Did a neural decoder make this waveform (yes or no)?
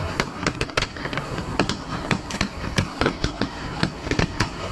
yes